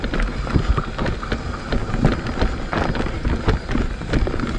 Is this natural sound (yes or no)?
yes